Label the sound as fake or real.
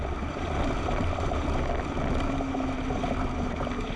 real